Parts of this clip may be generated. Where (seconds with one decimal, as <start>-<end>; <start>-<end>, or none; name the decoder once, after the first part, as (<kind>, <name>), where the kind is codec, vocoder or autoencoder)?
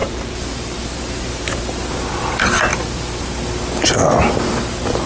0.0-1.0 (vocoder, BigVGAN v2)